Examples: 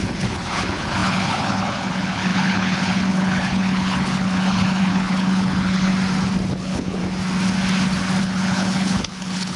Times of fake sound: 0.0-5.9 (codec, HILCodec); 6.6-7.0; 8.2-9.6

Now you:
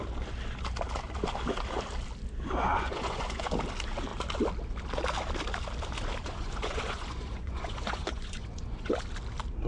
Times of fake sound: 2.7-3.5 (vocoder, Vocos); 6.3-8.9

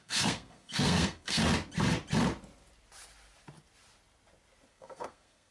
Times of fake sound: 0.0-1.4 (codec, SNAC); 4.7-5.5

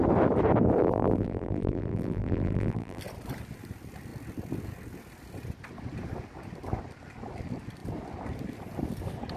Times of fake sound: 0.8-3.0 (vocoder, BigVGAN v2)

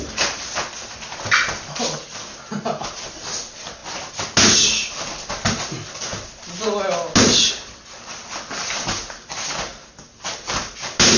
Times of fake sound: none

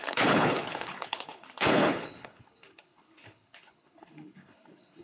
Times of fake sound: 0.0-5.0 (codec, HILCodec)

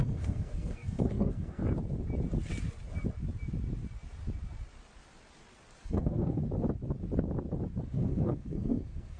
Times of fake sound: 0.0-1.6 (codec, SNAC); 5.8-6.4; 7.8-9.2